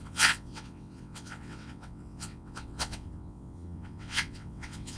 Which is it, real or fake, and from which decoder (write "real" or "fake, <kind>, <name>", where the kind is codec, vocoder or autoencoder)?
fake, vocoder, WaveNeXt